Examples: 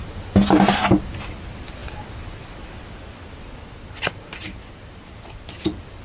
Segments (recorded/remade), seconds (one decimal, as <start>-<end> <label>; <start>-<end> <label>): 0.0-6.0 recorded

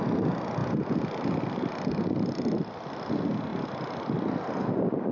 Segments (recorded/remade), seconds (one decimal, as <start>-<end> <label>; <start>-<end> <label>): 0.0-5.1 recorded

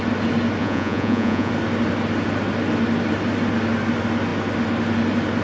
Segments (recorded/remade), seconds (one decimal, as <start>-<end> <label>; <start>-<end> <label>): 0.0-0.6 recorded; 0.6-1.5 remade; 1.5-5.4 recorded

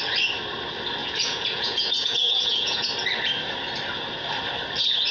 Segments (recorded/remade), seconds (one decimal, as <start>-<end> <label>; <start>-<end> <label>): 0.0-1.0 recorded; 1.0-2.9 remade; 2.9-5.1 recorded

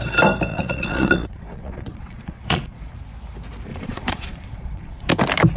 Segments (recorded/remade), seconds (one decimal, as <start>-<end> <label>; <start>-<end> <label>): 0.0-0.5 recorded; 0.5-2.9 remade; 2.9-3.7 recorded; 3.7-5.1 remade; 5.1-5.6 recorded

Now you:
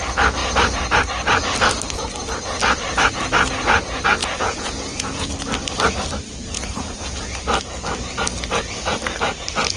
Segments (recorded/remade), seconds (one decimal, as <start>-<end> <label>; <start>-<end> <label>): 0.0-4.2 recorded; 4.2-5.3 remade; 5.3-6.4 recorded; 6.4-7.4 remade; 7.4-9.8 recorded

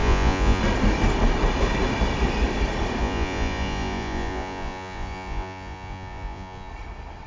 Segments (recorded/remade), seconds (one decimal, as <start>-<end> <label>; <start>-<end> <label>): 0.0-0.6 remade; 0.6-3.0 recorded; 3.0-6.7 remade; 6.7-7.3 recorded